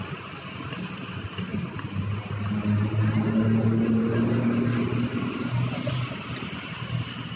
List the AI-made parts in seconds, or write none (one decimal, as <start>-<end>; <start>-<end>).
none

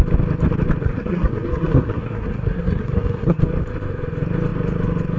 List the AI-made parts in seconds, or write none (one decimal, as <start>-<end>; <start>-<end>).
0.8-3.4

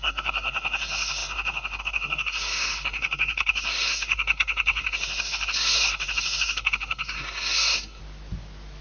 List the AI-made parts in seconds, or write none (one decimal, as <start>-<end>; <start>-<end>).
0.0-8.0

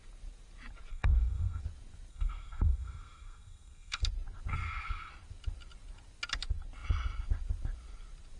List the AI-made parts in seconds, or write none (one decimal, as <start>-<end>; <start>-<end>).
0.9-1.6; 2.1-4.0; 4.5-5.1

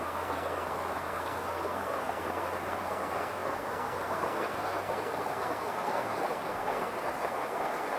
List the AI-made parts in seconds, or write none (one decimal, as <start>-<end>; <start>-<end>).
0.0-8.0

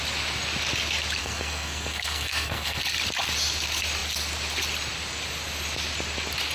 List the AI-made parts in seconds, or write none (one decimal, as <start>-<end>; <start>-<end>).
1.2-2.8